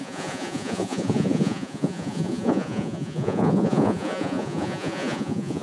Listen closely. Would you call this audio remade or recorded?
remade